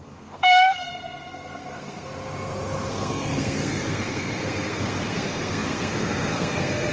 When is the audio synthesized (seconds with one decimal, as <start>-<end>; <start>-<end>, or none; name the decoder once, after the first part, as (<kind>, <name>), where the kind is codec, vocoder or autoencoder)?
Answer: 0.0-2.1 (codec, SNAC); 2.9-6.9